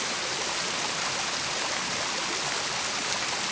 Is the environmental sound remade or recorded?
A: recorded